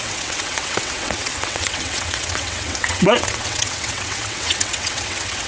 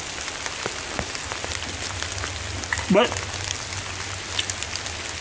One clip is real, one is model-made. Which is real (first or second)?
second